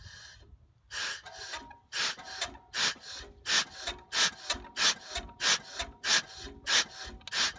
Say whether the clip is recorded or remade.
recorded